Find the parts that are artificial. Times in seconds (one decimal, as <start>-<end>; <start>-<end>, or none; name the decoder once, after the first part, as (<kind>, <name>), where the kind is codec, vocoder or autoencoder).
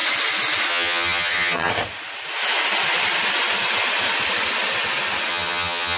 0.7-1.7 (vocoder, HiFi-GAN); 5.3-6.0